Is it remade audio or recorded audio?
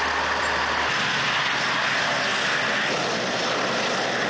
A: remade